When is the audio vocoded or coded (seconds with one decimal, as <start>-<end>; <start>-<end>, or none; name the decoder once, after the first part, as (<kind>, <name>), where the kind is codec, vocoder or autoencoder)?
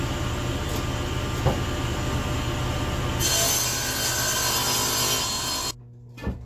none